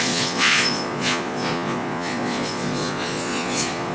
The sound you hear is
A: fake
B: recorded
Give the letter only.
A